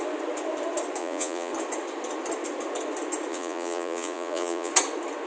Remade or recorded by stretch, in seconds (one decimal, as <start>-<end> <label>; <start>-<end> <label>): 0.0-1.0 recorded; 1.0-1.5 remade; 1.5-3.3 recorded; 3.3-4.7 remade; 4.7-5.3 recorded